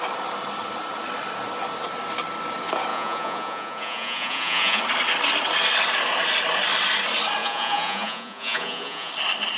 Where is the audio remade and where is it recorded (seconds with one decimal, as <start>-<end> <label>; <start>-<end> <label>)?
0.0-2.9 recorded; 2.9-4.8 remade; 4.8-7.4 recorded; 7.4-9.1 remade; 9.1-9.6 recorded